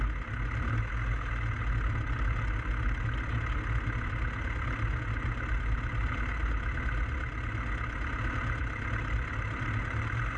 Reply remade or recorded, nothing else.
recorded